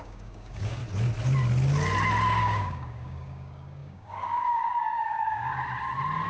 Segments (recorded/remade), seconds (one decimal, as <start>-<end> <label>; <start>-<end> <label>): 0.0-0.8 remade; 0.8-2.4 recorded; 2.4-5.5 remade; 5.5-6.3 recorded